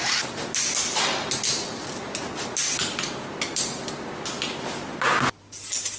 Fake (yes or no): no